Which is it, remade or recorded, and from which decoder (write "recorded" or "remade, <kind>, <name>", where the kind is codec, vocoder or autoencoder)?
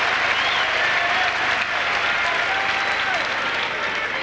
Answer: recorded